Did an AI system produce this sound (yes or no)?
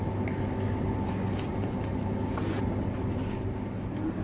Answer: no